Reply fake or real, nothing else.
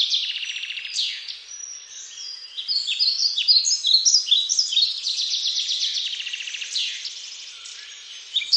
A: real